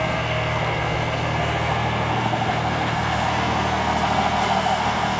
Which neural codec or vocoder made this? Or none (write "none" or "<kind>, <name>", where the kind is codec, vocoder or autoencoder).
codec, SNAC